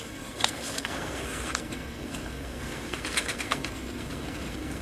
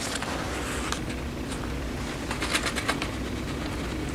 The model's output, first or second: first